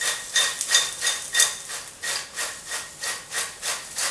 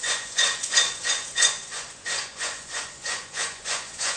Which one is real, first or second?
first